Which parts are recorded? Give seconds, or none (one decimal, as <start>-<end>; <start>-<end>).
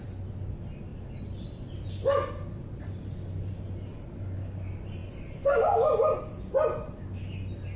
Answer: 0.0-7.8